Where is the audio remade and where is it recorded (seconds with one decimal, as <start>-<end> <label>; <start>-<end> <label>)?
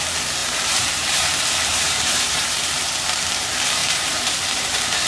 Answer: 0.0-0.4 recorded; 0.4-0.9 remade; 0.9-1.7 recorded; 1.7-2.8 remade; 2.8-3.8 recorded; 3.8-5.1 remade